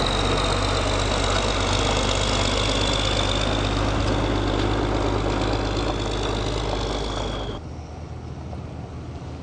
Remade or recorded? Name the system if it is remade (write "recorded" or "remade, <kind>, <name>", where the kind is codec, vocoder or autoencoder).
recorded